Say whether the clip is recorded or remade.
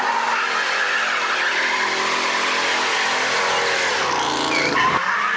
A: recorded